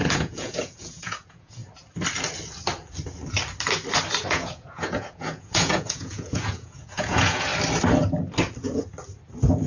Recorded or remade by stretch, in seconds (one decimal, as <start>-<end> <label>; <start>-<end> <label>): 0.0-1.6 remade; 1.6-4.3 recorded; 4.3-7.5 remade; 7.5-9.7 recorded